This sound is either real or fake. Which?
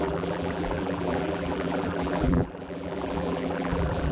fake